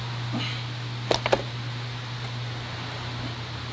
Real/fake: real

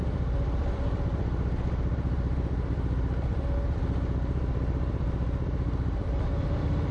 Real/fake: fake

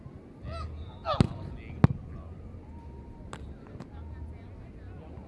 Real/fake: real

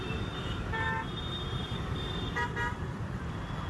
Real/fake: fake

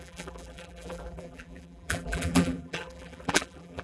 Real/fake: fake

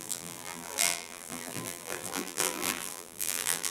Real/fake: fake